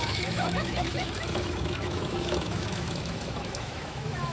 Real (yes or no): no